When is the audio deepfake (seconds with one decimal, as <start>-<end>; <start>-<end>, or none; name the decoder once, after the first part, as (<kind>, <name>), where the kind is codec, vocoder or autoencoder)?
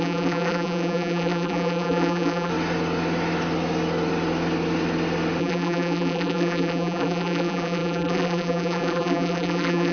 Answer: 0.0-2.5 (vocoder, BigVGAN v2); 5.4-9.9